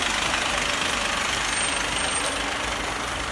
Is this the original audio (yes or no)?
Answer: yes